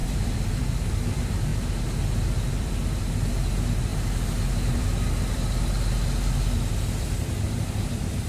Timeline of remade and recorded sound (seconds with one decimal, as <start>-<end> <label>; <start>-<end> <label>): 0.0-1.5 remade; 1.5-2.5 recorded; 2.5-8.3 remade